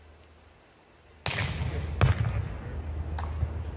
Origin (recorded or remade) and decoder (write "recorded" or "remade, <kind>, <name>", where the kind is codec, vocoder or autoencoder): recorded